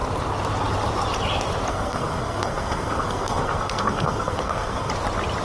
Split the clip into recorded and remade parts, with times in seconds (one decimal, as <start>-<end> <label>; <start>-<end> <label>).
0.0-1.7 recorded; 1.7-4.9 remade; 4.9-5.4 recorded